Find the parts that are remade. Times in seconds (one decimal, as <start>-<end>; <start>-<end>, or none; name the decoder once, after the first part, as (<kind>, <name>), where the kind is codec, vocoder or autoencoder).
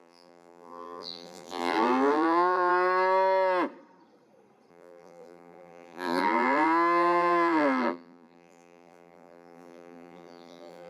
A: 0.0-2.7 (vocoder, BigVGAN v2); 4.7-10.9